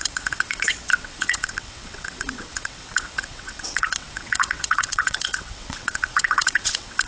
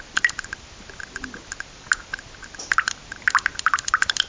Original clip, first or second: second